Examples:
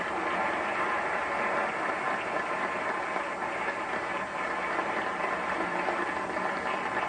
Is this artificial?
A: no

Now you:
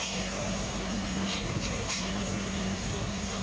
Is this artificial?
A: yes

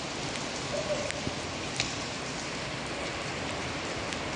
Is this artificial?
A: no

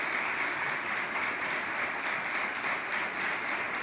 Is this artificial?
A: no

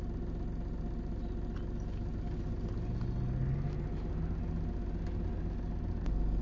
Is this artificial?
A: no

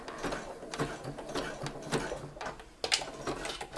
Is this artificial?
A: no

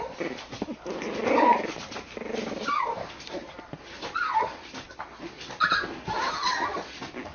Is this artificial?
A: no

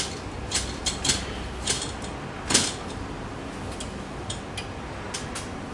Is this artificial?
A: no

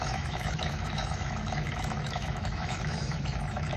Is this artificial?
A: yes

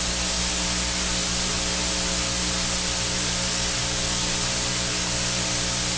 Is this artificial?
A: no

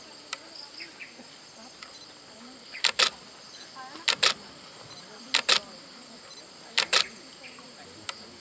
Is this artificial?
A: no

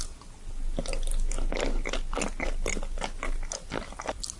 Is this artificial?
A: no